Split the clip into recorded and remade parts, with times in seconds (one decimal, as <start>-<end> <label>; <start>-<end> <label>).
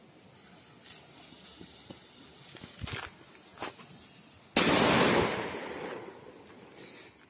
0.0-7.3 recorded